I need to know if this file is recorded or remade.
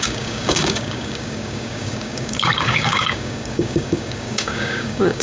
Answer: remade